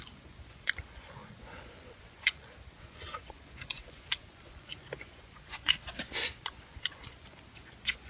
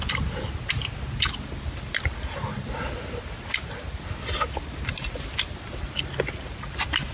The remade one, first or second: first